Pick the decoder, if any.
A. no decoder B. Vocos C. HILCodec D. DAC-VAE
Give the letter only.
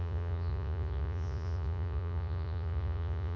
B